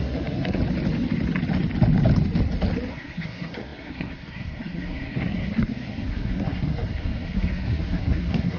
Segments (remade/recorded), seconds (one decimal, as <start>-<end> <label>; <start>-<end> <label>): 0.0-0.6 remade; 0.6-2.9 recorded; 2.9-8.6 remade